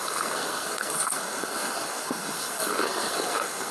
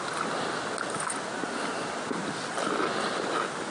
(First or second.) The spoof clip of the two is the first